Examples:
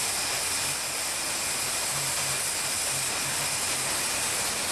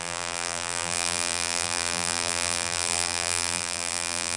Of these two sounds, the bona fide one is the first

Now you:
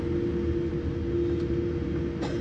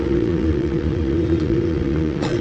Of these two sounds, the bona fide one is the first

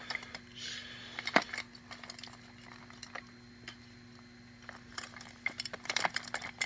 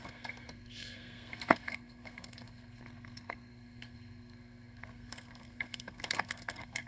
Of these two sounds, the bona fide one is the first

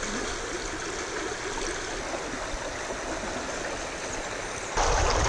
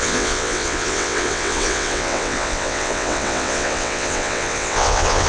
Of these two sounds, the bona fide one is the first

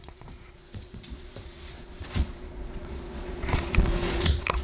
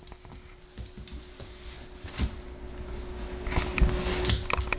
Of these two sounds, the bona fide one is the second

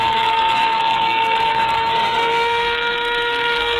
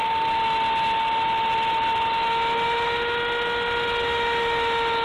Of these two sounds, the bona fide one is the second